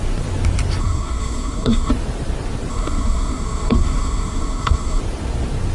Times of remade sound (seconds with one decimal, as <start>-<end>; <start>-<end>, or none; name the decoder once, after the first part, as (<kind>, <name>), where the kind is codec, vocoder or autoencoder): 0.8-1.9 (codec, SNAC); 2.7-5.0